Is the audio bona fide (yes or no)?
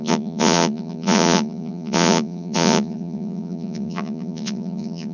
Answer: no